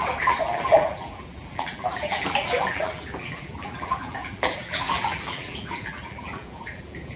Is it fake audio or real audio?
fake